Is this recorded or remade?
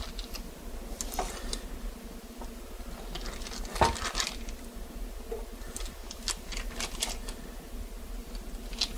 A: recorded